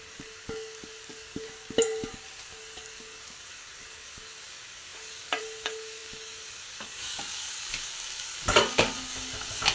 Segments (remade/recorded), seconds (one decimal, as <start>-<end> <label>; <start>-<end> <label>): 0.0-9.7 remade